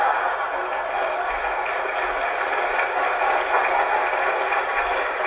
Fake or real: real